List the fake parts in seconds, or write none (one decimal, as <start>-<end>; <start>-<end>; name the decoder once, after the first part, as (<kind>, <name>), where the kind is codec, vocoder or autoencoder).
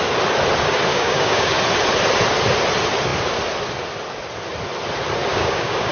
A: 0.9-1.6 (codec, DAC); 5.3-5.9